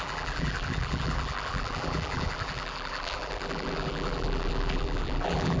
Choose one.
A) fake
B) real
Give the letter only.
A